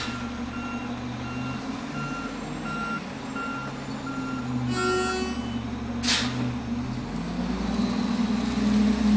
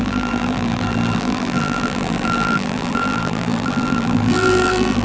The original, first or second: first